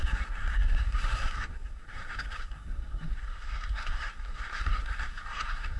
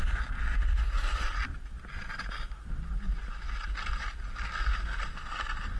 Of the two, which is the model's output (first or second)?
first